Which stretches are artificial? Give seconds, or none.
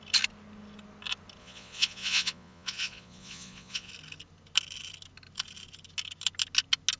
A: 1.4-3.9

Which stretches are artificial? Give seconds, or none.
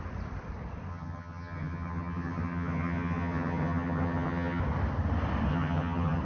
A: 0.9-4.6; 5.5-6.2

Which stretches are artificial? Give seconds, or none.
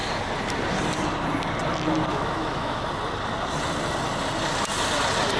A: 2.1-2.8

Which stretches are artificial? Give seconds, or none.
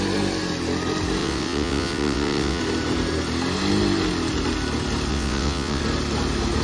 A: 1.2-2.6; 5.1-5.8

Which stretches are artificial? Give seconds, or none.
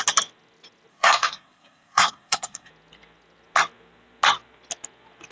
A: 0.9-2.7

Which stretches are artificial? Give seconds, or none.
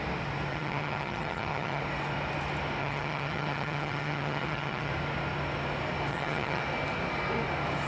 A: 0.5-1.8; 2.8-4.9; 6.1-6.6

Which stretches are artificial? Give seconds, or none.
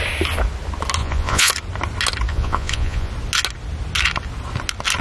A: 1.0-1.5; 2.3-3.1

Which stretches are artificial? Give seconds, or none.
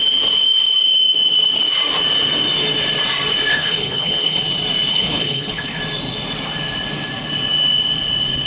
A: 3.5-4.4; 4.9-5.8